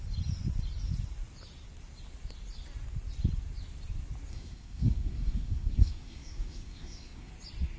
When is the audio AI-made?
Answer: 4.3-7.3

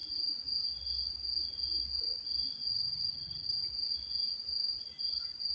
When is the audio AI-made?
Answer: 2.7-3.7

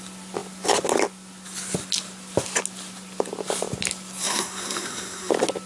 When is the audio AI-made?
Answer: 4.2-5.3